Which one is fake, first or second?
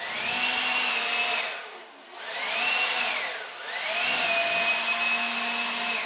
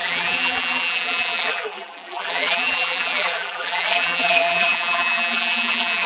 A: second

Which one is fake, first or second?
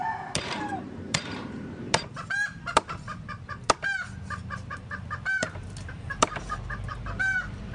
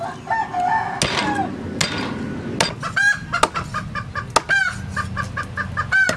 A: first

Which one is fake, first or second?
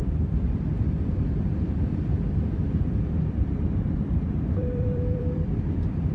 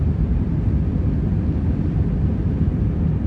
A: first